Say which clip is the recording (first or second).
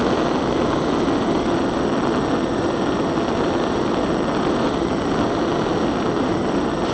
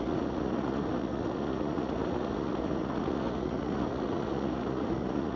first